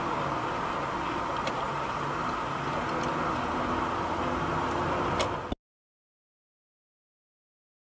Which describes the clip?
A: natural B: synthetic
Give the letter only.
A